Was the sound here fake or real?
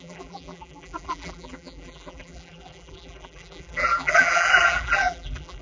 fake